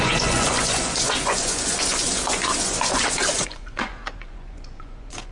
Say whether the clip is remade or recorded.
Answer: remade